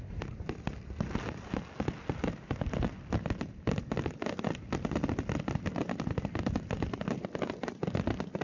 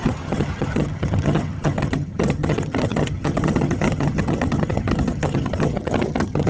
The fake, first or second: second